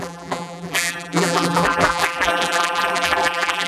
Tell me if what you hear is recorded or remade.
remade